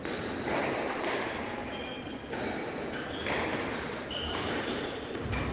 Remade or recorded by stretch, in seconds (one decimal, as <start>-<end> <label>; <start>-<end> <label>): 0.0-5.5 recorded